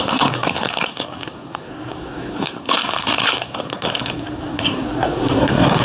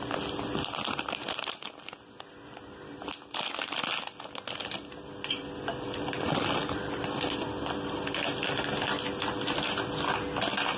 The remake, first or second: first